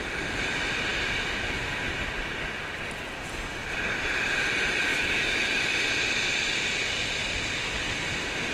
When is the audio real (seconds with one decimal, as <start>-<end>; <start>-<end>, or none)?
0.0-4.9; 5.6-8.5